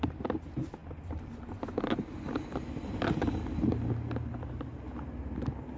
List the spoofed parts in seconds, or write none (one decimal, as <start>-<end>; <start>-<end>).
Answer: none